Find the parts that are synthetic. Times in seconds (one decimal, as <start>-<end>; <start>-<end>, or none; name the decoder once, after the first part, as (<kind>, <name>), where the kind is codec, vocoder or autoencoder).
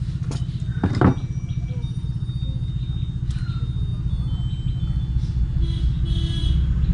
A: none